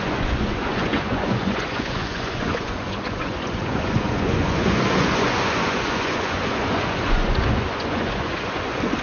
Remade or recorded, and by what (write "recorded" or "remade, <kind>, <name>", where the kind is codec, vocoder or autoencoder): remade, vocoder, Vocos